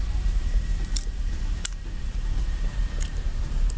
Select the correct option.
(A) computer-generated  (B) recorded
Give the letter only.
A